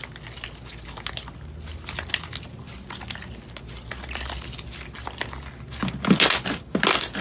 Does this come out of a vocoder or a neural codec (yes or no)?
no